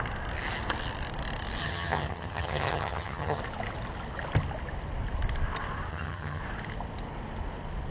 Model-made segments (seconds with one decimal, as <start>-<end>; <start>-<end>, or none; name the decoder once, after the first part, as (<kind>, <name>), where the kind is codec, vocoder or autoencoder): 1.6-3.4 (vocoder, HiFi-GAN); 5.9-6.4